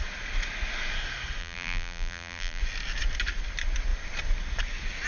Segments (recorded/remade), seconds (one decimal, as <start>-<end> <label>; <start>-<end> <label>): 0.0-1.4 recorded; 1.4-2.6 remade; 2.6-5.1 recorded